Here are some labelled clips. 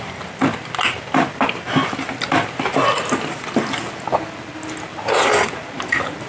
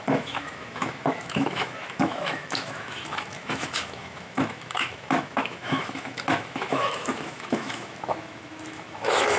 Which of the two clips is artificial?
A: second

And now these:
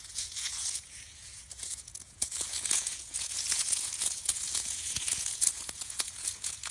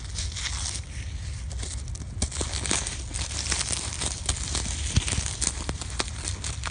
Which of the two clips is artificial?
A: first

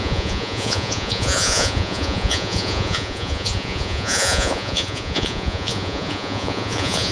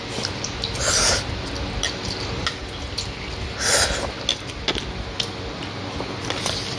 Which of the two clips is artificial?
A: first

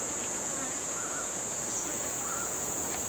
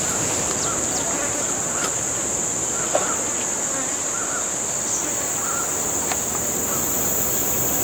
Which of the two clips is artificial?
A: first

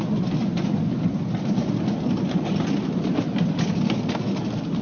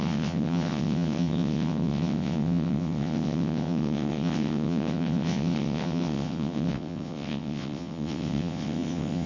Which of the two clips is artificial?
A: second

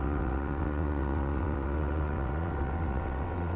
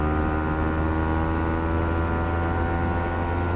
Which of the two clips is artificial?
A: first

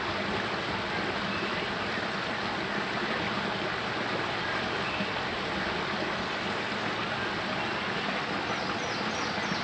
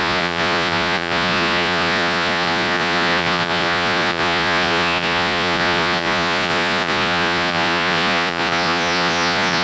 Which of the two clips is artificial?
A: second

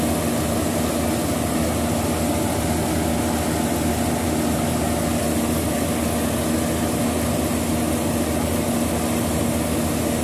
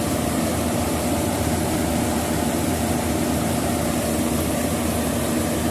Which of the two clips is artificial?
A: second